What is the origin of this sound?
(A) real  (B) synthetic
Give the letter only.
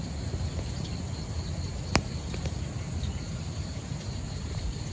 A